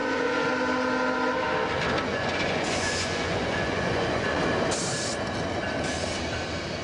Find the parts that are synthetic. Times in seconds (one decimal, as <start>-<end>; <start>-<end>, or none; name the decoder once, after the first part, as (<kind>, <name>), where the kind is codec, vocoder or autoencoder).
0.0-0.5 (vocoder, Vocos); 2.1-4.4